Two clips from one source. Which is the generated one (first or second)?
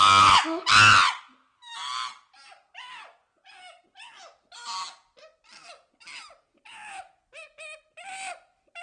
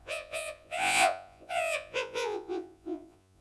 second